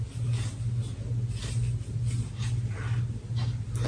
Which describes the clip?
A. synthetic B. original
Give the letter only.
B